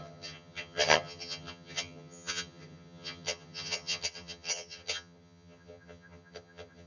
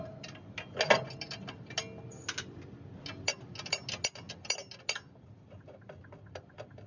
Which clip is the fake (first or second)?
first